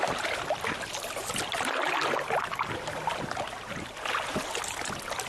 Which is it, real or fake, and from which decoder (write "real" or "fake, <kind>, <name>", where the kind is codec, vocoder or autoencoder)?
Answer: real